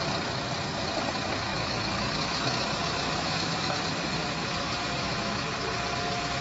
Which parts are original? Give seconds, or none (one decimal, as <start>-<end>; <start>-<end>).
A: 0.0-1.5; 3.8-4.4; 5.5-6.4